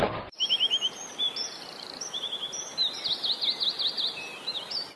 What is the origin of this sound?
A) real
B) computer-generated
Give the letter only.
A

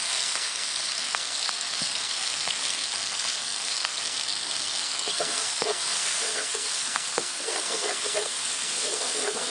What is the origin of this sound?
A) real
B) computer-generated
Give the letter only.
B